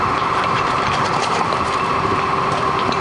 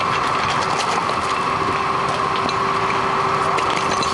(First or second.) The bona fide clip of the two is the second